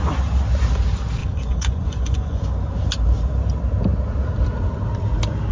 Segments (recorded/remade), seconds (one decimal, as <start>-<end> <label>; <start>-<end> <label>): 0.0-1.2 recorded; 1.2-2.4 remade; 2.4-5.5 recorded